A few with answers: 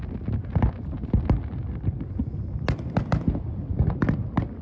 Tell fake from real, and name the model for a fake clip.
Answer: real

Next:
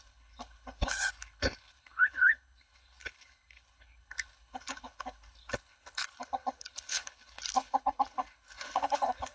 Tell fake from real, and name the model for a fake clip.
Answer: fake, codec, HILCodec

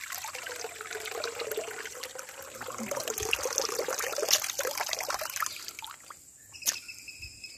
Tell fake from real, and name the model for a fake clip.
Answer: real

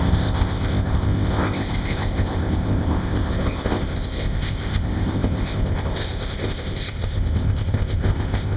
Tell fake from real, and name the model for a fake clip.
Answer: fake, codec, ZipCodec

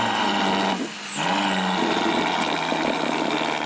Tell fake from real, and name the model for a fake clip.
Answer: real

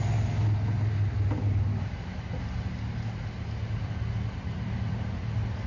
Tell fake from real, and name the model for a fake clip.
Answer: real